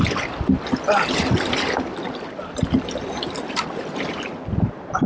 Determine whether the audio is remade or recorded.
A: recorded